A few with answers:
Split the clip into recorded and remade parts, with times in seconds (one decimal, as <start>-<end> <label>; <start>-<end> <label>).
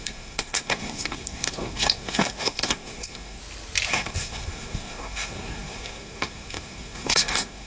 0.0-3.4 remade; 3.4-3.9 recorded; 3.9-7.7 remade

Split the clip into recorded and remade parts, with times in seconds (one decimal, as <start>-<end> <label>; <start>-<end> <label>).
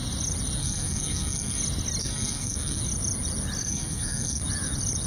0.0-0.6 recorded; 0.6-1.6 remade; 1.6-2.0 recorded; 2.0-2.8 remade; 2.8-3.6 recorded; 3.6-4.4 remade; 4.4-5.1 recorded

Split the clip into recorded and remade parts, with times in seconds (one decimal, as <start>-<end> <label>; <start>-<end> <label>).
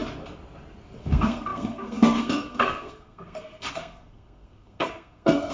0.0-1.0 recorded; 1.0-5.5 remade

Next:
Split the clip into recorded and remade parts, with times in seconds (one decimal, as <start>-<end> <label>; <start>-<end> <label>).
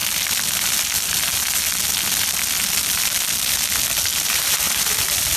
0.0-5.4 recorded